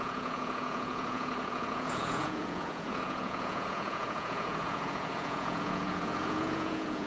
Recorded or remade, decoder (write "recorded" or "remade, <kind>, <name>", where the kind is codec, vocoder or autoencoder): remade, vocoder, Vocos